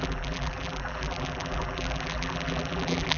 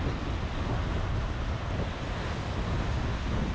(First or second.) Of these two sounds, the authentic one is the second